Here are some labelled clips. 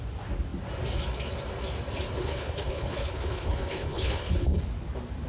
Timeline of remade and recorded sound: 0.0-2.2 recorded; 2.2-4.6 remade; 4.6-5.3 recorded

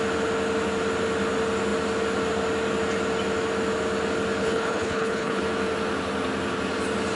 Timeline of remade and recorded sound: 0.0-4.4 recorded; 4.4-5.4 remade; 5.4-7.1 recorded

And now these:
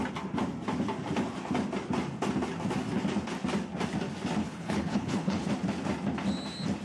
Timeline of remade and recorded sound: 0.0-4.4 recorded; 4.4-5.5 remade; 5.5-6.8 recorded

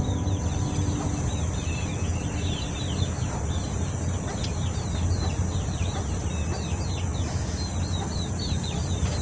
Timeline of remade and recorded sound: 0.0-9.2 recorded

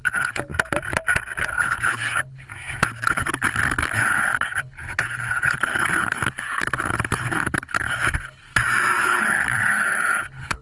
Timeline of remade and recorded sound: 0.0-0.5 remade; 0.5-1.4 recorded; 1.4-2.5 remade; 2.5-3.1 recorded; 3.1-8.5 remade; 8.5-9.0 recorded; 9.0-10.6 remade